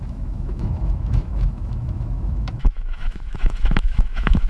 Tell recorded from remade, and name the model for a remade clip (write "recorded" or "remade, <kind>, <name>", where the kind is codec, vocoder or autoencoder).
remade, autoencoder, DAC-VAE